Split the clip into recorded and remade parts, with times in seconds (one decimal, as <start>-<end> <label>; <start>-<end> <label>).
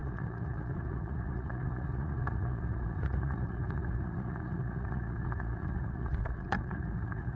0.0-7.4 remade